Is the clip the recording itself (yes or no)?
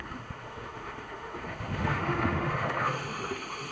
no